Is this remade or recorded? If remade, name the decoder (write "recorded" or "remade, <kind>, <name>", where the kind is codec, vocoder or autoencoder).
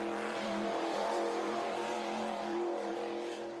remade, vocoder, BigVGAN v2